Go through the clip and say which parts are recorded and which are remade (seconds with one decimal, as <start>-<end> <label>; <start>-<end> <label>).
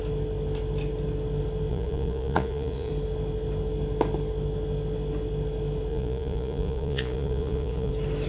0.0-1.7 recorded; 1.7-2.9 remade; 2.9-5.9 recorded; 5.9-7.9 remade; 7.9-8.3 recorded